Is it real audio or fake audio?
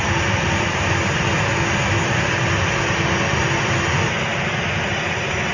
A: real